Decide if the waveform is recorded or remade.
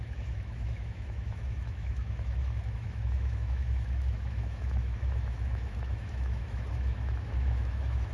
remade